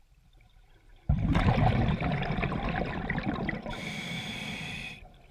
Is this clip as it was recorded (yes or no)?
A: no